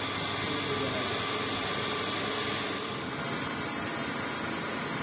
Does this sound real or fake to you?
real